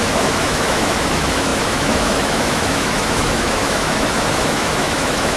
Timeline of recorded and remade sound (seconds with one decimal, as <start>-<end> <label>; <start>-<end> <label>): 0.0-5.4 remade